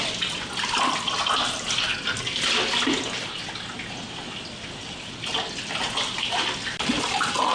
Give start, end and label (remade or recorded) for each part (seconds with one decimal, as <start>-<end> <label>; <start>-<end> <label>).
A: 0.0-7.5 recorded